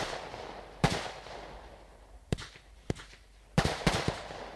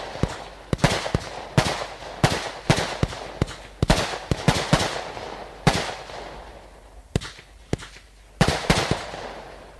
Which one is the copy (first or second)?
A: first